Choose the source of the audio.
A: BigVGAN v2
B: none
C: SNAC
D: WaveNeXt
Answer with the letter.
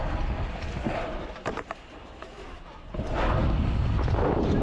B